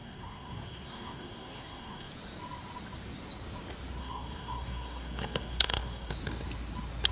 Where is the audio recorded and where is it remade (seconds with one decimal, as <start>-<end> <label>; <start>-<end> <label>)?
0.0-2.1 remade; 2.1-4.0 recorded; 4.0-6.1 remade; 6.1-7.1 recorded